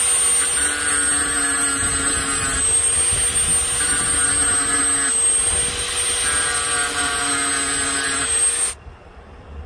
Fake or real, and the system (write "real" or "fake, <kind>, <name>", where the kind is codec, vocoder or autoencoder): real